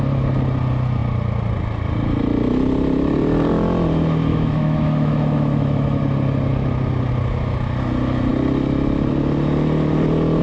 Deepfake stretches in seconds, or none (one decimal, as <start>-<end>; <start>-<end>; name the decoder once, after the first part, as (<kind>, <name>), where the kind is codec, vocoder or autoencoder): 4.3-6.0 (autoencoder, DAC-VAE)